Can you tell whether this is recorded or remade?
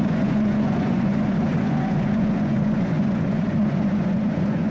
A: remade